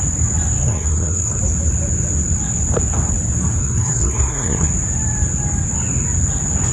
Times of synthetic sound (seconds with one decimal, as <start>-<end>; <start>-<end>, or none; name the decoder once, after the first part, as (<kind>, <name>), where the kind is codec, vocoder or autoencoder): 0.6-1.4 (codec, SNAC); 3.6-4.7